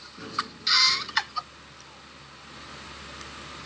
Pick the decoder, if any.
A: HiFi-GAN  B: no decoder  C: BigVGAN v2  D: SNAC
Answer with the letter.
B